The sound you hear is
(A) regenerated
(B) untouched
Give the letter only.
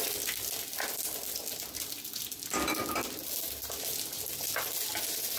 B